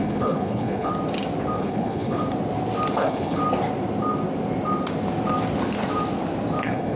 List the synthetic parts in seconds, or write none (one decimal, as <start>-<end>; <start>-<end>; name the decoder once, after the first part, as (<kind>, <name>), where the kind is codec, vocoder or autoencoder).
0.0-0.9 (codec, HILCodec); 1.6-2.2; 3.0-3.4; 6.6-7.0